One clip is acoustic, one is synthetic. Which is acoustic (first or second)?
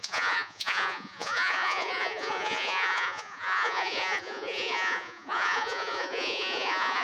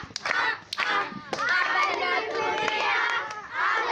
second